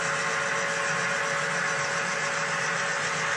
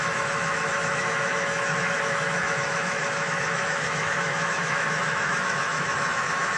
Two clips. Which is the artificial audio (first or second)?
second